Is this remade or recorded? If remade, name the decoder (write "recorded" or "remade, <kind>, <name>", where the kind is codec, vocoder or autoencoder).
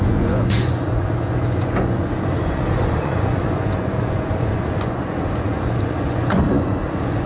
remade, vocoder, Vocos